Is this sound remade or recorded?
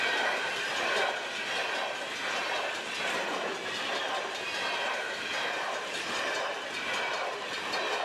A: remade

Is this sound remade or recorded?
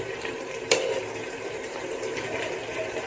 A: remade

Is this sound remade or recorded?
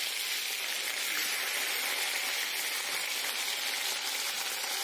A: recorded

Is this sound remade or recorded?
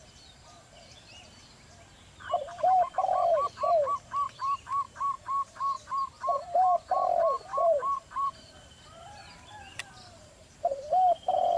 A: remade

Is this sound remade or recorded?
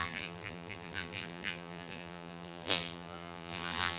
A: remade